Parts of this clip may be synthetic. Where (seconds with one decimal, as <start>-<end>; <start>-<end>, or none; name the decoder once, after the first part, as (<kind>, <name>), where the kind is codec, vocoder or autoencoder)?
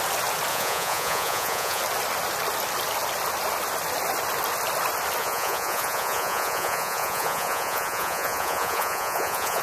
0.5-1.8 (vocoder, Vocos); 5.2-9.6